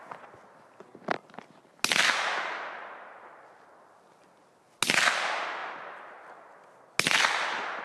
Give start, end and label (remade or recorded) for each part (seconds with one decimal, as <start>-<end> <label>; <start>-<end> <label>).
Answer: 0.0-7.8 recorded